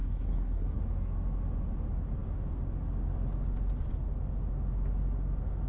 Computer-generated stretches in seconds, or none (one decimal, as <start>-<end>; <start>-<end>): 0.0-0.8